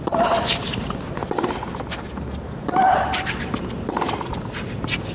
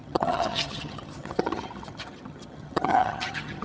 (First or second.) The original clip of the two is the first